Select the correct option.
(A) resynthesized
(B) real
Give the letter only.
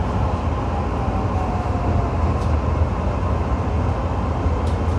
B